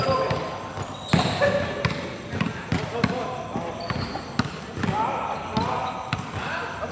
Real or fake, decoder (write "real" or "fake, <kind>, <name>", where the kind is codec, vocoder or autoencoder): real